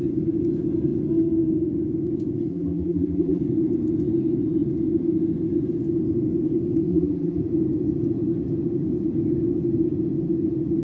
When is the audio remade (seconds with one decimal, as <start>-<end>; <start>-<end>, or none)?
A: 2.5-3.4; 6.9-7.4